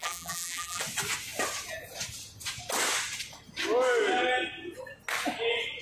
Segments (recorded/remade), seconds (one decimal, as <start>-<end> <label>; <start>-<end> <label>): 0.0-0.8 remade; 0.8-5.8 recorded